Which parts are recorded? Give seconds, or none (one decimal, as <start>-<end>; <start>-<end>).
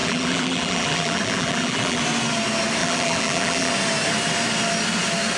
2.0-2.8; 3.7-5.4